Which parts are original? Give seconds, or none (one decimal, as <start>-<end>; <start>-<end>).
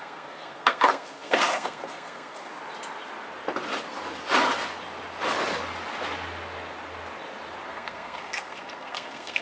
2.5-7.7